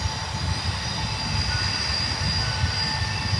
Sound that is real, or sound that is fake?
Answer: real